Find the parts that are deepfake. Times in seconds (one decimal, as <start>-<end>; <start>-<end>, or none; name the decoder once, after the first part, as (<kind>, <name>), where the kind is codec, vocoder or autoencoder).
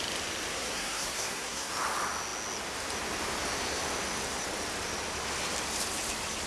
0.5-1.7 (codec, SNAC)